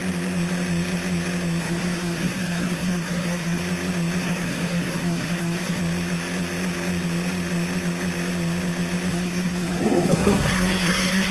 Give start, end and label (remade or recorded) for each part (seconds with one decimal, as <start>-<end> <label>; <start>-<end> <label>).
0.0-1.6 recorded; 1.6-3.6 remade; 3.6-4.2 recorded; 4.2-5.8 remade; 5.8-9.1 recorded; 9.1-11.3 remade